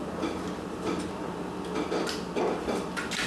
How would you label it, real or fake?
real